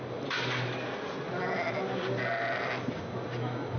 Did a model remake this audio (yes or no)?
no